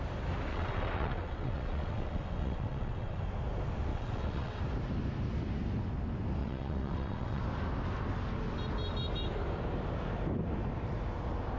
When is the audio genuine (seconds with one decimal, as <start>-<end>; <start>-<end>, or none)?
0.0-0.5; 3.2-3.9; 4.6-6.4; 7.4-11.6